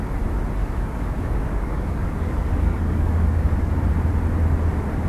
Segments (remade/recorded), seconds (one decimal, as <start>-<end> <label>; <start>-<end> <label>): 0.0-0.6 recorded; 0.6-3.7 remade; 3.7-5.1 recorded

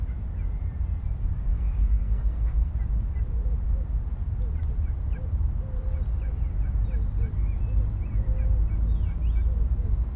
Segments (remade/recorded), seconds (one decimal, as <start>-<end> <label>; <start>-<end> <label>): 0.0-1.5 recorded; 1.5-2.7 remade; 2.7-10.2 recorded

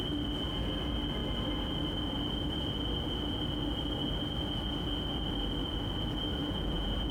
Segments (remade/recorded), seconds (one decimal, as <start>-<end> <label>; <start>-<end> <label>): 0.0-6.4 recorded; 6.4-7.1 remade

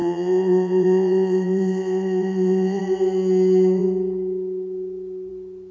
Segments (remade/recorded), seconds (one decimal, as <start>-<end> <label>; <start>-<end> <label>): 0.0-2.8 remade; 2.8-5.7 recorded

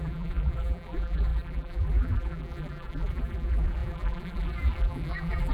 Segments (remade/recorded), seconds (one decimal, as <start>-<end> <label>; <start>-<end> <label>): 0.0-5.5 remade

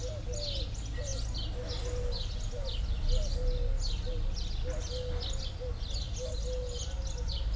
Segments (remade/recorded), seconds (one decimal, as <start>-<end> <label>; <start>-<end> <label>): 0.0-7.6 recorded

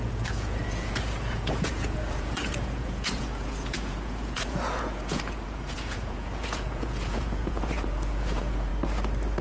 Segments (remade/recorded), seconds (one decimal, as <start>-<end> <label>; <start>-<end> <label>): 0.0-8.7 remade; 8.7-9.4 recorded